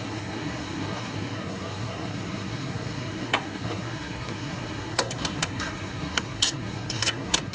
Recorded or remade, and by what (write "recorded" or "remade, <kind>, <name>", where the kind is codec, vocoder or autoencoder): remade, codec, SNAC